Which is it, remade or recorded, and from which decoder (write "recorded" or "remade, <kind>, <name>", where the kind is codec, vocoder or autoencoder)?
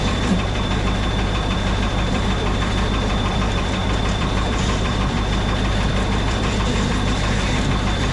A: remade, vocoder, BigVGAN v2